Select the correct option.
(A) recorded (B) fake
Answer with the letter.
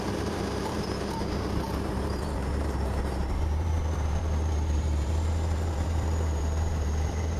B